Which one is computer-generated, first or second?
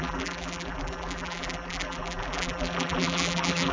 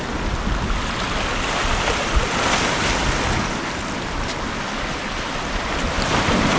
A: first